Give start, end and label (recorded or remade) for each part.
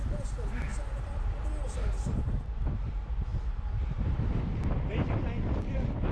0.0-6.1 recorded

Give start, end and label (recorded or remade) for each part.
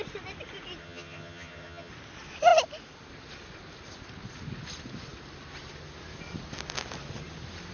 0.0-0.8 recorded; 0.8-1.9 remade; 1.9-7.7 recorded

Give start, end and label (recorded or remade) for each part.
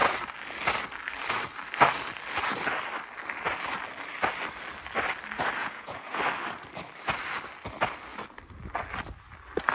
0.0-5.6 recorded; 5.6-6.2 remade; 6.2-9.7 recorded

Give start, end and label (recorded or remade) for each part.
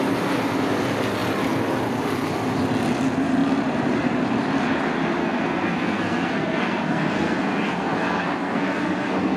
0.0-5.2 recorded; 5.2-9.4 remade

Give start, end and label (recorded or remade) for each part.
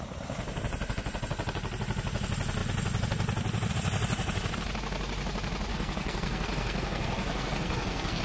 0.0-5.7 recorded; 5.7-8.2 remade